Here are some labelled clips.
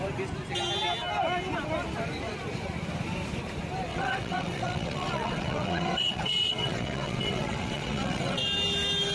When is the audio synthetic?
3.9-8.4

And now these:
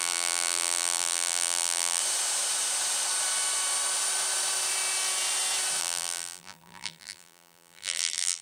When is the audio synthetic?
0.0-2.0; 5.8-8.4

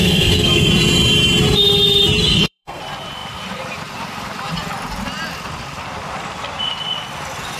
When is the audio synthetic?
0.0-0.7; 2.2-2.8